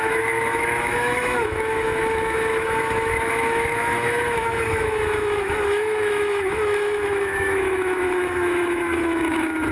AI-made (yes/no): yes